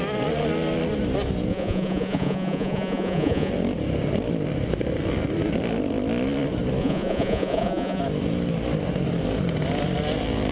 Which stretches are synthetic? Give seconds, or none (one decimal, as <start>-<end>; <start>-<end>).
1.5-3.5; 6.8-8.0